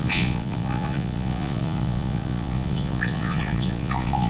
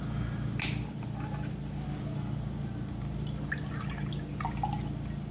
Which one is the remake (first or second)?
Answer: first